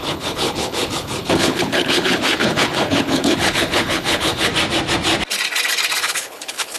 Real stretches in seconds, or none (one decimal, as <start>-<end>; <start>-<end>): 4.5-6.0